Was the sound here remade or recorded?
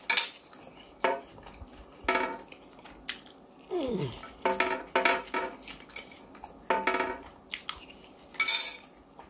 recorded